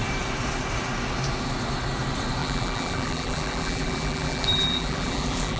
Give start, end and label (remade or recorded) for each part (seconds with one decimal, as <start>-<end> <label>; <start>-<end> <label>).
0.0-2.4 recorded; 2.4-5.6 remade